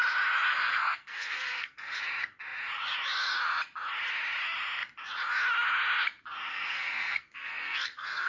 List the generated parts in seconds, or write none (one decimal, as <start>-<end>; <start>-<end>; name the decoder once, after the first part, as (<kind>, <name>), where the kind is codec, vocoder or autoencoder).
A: 0.5-2.0 (codec, SNAC); 6.5-8.3